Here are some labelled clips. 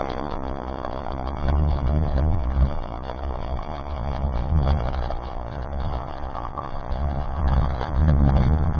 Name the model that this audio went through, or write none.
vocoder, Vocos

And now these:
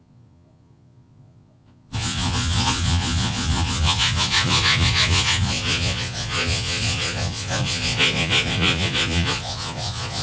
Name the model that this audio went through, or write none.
vocoder, Vocos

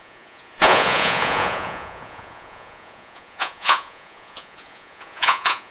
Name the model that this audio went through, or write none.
vocoder, Vocos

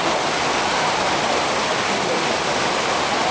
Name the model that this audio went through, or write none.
none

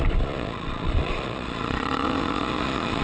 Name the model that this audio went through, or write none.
vocoder, Vocos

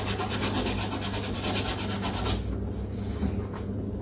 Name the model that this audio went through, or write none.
none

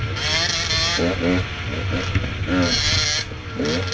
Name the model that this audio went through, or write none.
none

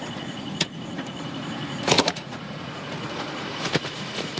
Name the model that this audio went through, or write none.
vocoder, Vocos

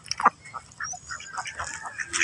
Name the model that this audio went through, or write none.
none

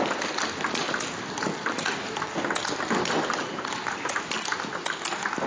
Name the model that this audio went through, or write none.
none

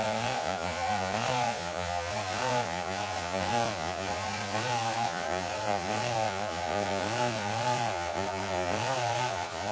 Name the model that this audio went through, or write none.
vocoder, Vocos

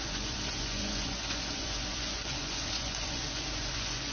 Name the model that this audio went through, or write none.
vocoder, Vocos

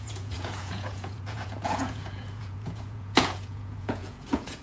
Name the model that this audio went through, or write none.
vocoder, Vocos